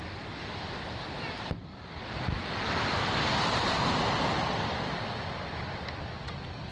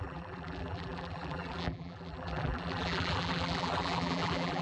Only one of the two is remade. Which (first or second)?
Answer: second